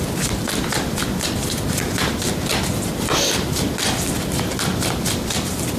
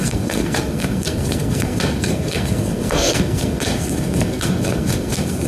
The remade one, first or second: second